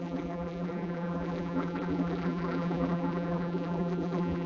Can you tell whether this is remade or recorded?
remade